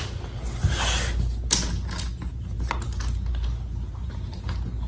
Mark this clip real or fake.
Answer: real